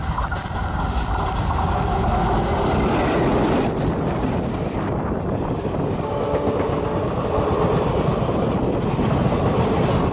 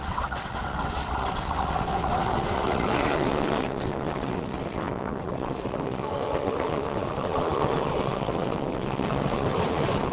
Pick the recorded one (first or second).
first